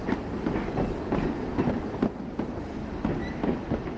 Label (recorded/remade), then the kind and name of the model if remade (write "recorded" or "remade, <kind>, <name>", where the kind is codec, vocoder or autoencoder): recorded